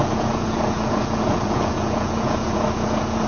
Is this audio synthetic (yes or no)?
yes